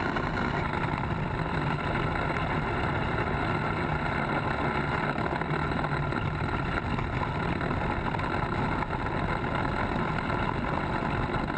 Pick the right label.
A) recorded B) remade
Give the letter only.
A